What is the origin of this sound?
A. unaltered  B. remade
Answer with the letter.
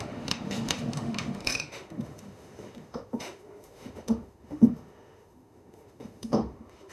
B